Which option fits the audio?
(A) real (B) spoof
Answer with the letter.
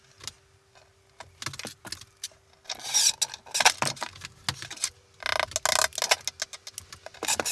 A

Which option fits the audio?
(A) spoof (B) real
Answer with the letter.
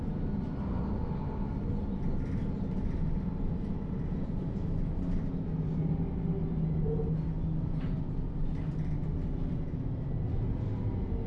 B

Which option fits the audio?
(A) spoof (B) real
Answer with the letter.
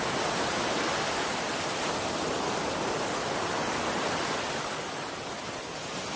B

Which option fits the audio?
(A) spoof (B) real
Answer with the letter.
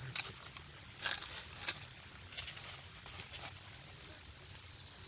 B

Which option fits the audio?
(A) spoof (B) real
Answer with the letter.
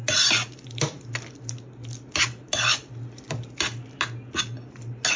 B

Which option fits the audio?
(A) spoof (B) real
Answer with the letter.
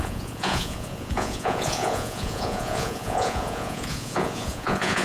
A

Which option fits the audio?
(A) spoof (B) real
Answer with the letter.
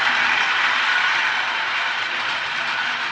A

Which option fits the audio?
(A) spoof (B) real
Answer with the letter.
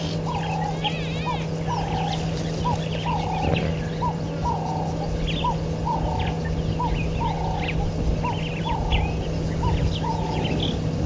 B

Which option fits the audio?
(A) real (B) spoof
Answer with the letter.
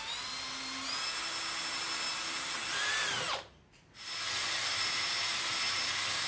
A